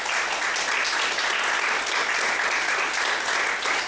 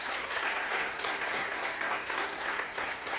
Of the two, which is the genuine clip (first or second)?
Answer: first